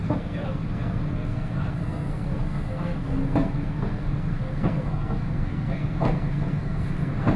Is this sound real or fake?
fake